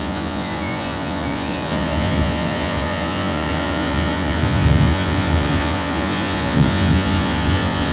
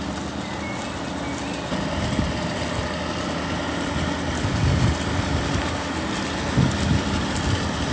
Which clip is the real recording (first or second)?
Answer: second